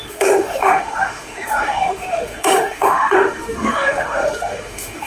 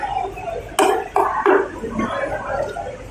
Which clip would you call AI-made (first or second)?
first